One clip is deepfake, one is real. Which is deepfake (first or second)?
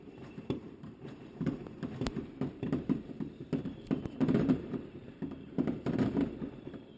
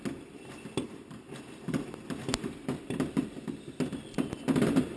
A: first